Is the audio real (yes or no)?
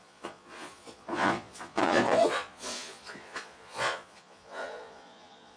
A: no